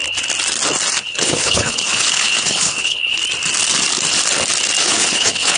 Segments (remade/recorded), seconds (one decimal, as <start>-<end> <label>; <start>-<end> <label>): 0.0-1.0 recorded; 1.0-3.2 remade; 3.2-4.8 recorded; 4.8-5.6 remade